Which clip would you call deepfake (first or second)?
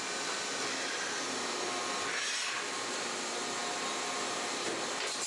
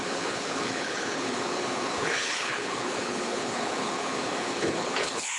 second